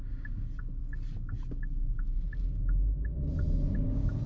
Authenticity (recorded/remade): recorded